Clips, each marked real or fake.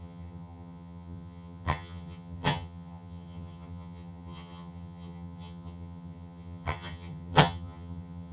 fake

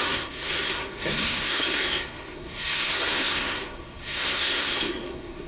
fake